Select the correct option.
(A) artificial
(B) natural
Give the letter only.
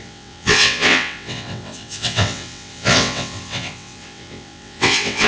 A